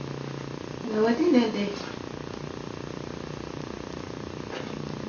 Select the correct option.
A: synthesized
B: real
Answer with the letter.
B